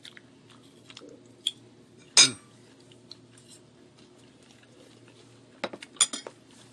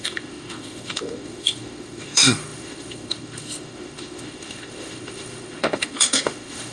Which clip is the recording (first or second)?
first